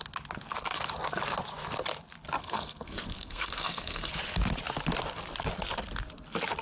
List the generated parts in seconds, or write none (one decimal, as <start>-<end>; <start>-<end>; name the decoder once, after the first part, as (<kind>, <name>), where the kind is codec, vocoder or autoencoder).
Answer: 2.4-4.1 (codec, SNAC)